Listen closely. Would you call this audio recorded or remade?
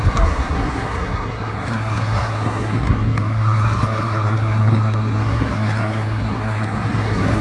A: remade